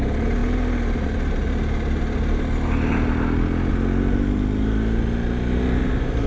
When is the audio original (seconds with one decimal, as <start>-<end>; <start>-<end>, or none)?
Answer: 0.0-6.3